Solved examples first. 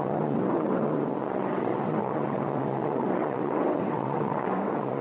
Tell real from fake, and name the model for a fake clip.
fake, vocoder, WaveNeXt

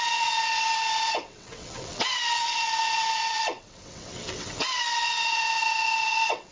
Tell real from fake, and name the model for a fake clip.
fake, vocoder, WaveNeXt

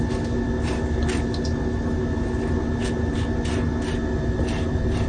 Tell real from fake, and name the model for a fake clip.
real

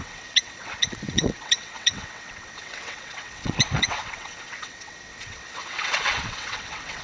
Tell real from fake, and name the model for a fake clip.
fake, vocoder, WaveNeXt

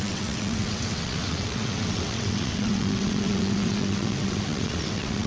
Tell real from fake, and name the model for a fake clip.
fake, vocoder, WaveNeXt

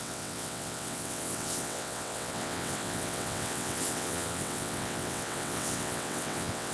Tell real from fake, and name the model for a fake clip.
fake, vocoder, WaveNeXt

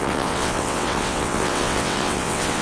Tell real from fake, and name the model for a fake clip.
fake, vocoder, WaveNeXt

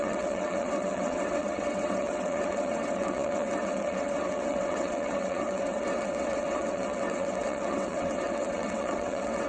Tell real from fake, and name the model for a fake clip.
fake, vocoder, WaveNeXt